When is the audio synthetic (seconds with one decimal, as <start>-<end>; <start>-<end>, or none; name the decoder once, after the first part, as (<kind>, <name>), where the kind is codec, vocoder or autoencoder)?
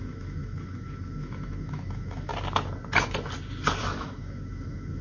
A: 0.0-2.3 (autoencoder, DAC-VAE); 3.8-5.0